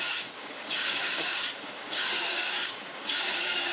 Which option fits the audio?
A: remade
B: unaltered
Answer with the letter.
A